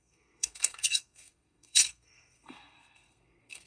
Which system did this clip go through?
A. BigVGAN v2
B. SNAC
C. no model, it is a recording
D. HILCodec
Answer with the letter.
B